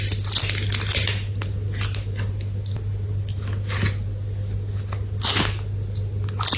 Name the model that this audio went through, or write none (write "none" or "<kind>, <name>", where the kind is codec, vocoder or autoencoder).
none